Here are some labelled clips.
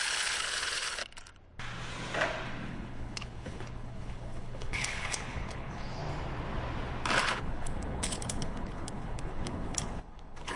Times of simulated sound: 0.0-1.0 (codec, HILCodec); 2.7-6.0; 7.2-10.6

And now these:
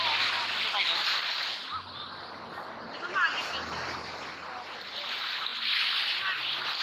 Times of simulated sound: none